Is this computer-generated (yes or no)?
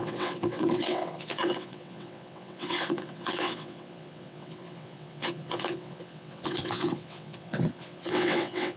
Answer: yes